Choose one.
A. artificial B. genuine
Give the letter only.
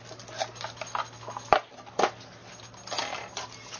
B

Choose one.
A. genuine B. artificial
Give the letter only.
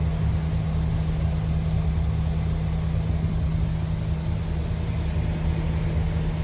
A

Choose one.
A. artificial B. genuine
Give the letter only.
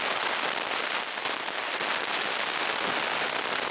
B